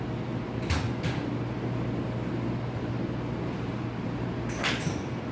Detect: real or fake real